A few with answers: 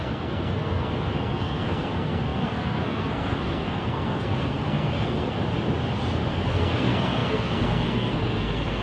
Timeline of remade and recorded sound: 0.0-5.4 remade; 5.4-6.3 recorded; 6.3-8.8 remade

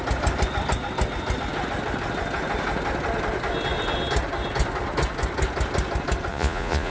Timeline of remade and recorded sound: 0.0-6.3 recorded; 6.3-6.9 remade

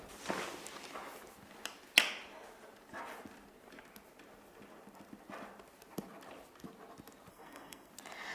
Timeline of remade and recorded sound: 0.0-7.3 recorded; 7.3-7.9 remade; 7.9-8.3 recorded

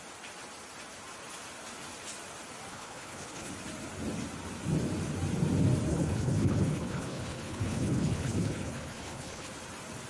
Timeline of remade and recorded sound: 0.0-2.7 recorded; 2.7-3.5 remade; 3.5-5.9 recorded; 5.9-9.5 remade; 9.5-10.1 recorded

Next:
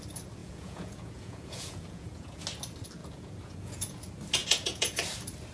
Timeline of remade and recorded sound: 0.0-0.4 recorded; 0.4-2.4 remade; 2.4-3.0 recorded; 3.0-4.0 remade; 4.0-4.4 recorded; 4.4-5.0 remade; 5.0-5.5 recorded